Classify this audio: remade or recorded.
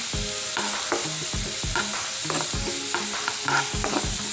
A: recorded